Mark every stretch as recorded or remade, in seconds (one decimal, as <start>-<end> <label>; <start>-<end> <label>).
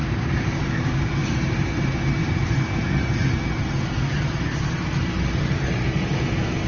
0.0-0.6 remade; 0.6-1.2 recorded; 1.2-1.7 remade; 1.7-2.2 recorded; 2.2-6.2 remade; 6.2-6.7 recorded